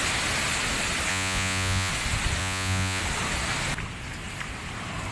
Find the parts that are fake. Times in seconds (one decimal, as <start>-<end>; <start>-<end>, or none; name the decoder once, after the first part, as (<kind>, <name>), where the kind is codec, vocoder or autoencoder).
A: 1.1-1.9 (vocoder, Vocos); 2.4-3.0